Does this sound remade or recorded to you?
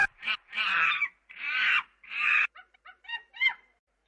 remade